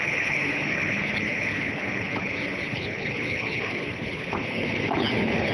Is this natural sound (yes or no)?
no